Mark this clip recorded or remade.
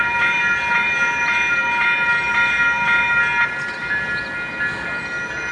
recorded